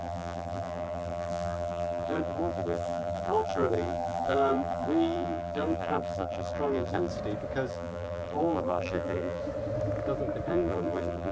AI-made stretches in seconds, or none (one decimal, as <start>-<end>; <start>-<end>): 0.0-7.1; 7.7-9.4; 10.5-11.3